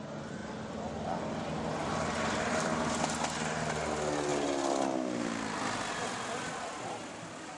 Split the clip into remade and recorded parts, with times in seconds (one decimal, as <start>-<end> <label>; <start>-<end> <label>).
0.0-0.4 recorded; 0.4-0.9 remade; 0.9-1.8 recorded; 1.8-2.8 remade; 2.8-7.6 recorded